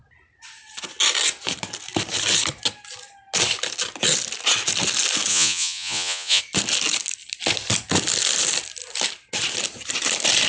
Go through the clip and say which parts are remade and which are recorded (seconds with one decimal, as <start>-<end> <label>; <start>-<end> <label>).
0.0-5.3 recorded; 5.3-6.4 remade; 6.4-10.5 recorded